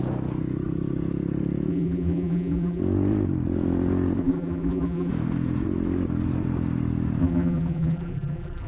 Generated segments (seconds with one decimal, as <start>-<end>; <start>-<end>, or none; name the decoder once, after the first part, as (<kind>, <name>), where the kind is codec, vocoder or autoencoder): 1.7-2.8 (vocoder, BigVGAN v2); 4.2-5.1; 7.2-8.7